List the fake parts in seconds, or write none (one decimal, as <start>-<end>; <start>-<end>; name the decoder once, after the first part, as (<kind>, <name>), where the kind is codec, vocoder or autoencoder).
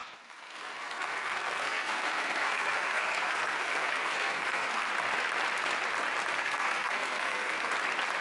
0.0-4.9 (codec, SNAC); 6.4-7.7